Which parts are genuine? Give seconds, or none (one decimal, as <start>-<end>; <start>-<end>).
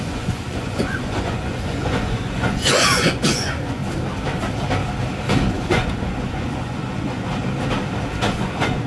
3.8-5.5; 7.3-8.2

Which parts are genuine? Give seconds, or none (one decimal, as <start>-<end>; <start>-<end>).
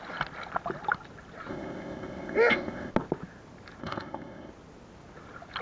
0.0-1.5; 2.9-3.8; 4.5-5.6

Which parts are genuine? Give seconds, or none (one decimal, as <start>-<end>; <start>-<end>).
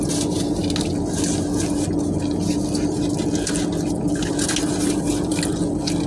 0.0-6.1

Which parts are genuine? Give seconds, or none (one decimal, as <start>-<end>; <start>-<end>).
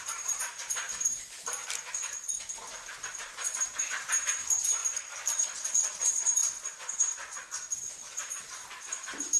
1.6-3.1; 4.8-6.0; 6.4-7.9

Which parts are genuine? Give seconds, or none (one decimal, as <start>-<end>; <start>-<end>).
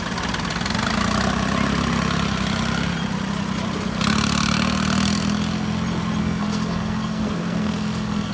0.0-6.2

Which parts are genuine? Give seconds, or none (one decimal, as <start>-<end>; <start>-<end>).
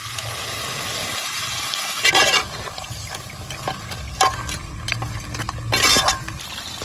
0.0-1.0; 2.1-6.8